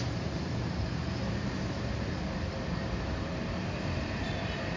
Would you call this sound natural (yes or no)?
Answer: no